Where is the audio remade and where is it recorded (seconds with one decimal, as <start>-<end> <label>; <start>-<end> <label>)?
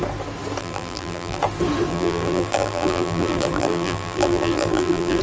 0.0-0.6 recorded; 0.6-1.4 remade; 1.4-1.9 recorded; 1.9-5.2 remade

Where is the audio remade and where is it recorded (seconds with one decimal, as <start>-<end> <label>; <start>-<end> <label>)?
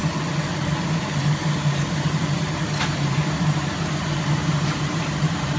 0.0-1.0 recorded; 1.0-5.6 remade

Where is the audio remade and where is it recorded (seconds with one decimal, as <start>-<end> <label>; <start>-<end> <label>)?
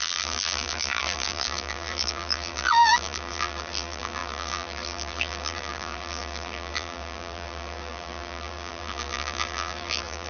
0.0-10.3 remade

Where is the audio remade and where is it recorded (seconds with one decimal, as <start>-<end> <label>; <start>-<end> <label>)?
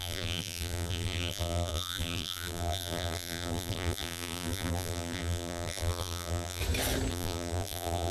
0.0-6.6 remade; 6.6-7.1 recorded; 7.1-8.1 remade